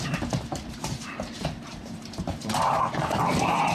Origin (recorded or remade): remade